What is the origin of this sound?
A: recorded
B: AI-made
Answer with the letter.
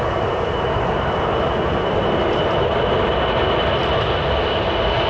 A